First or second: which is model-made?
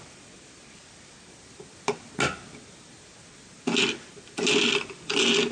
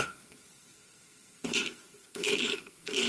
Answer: second